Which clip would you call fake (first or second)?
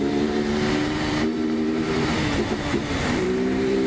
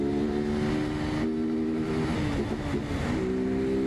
first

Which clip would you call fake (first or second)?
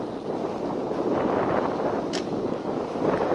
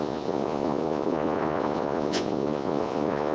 second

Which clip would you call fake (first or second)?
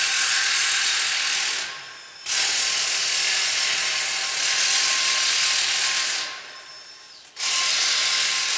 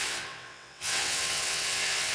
second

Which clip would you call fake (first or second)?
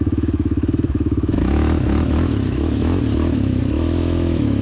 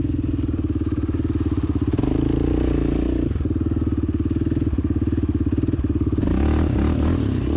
first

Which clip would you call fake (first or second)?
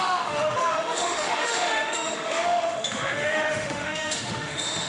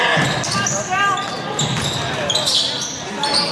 first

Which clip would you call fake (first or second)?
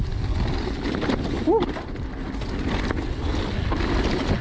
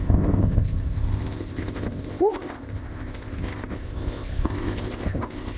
second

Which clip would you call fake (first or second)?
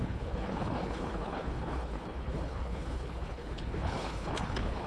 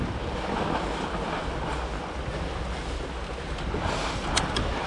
first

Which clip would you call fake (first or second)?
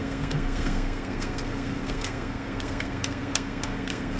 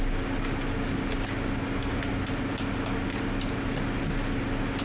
first